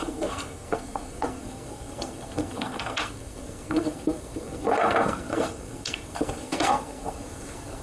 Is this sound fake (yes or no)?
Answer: yes